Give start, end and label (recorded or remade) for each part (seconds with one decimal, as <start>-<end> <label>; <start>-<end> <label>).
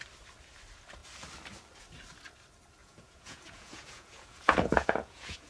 0.0-2.8 recorded; 2.8-5.5 remade